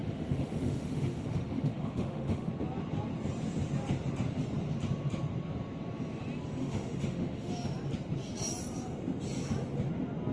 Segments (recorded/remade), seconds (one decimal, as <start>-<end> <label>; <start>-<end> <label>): 0.0-2.5 remade; 2.5-6.6 recorded; 6.6-7.5 remade; 7.5-10.3 recorded